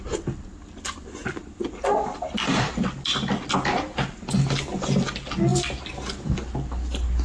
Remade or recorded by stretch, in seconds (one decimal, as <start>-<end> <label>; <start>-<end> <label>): 0.0-7.2 recorded

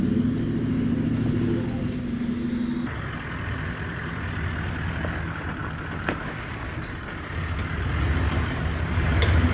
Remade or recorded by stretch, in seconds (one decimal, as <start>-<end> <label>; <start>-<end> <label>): 0.0-9.5 recorded

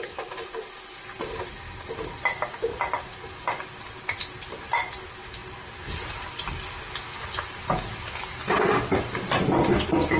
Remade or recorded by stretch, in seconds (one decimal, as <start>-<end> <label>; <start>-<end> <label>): 0.0-10.2 recorded

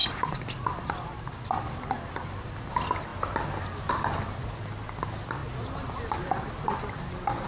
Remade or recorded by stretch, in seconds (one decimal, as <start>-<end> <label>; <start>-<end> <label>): 0.0-2.7 remade; 2.7-5.4 recorded; 5.4-6.9 remade; 6.9-7.5 recorded

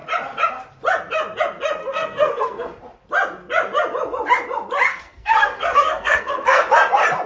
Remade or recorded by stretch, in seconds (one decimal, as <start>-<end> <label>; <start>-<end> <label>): 0.0-1.8 recorded; 1.8-2.8 remade; 2.8-4.9 recorded; 4.9-6.7 remade; 6.7-7.3 recorded

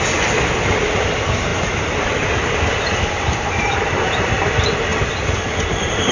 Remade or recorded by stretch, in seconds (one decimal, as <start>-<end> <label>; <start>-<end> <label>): 0.0-1.5 recorded; 1.5-3.8 remade; 3.8-6.1 recorded